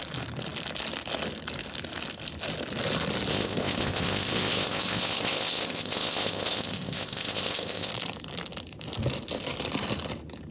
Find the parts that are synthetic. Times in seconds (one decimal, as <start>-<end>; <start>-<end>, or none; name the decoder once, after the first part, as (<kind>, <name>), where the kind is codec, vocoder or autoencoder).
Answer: 3.3-7.9 (codec, ZipCodec)